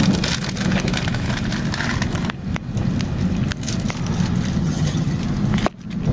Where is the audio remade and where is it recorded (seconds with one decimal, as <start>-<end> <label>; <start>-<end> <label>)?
0.0-4.6 recorded; 4.6-5.2 remade; 5.2-6.1 recorded